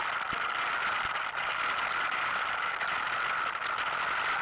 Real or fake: real